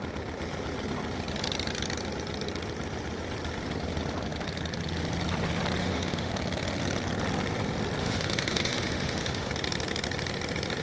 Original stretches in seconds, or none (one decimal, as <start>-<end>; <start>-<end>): 0.0-5.8; 6.3-8.0; 9.5-10.8